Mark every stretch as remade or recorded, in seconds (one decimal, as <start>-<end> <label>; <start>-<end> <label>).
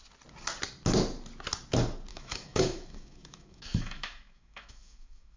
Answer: 0.0-2.1 recorded; 2.1-5.4 remade